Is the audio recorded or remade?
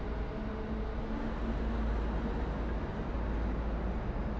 recorded